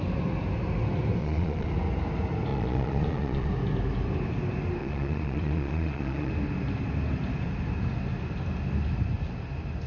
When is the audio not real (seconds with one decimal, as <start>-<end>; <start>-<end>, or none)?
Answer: 1.2-1.7; 2.5-3.5; 4.8-6.3